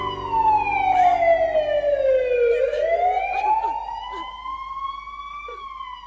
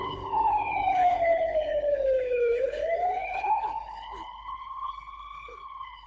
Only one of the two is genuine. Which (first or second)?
first